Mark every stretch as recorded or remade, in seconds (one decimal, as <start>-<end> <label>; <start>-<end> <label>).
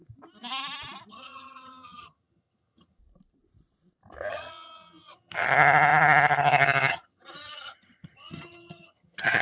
0.0-1.1 recorded; 1.1-3.0 remade; 3.0-4.3 recorded; 4.3-9.4 remade